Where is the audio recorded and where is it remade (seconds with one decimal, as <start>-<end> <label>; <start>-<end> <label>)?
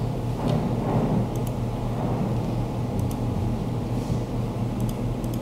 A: 0.0-5.4 recorded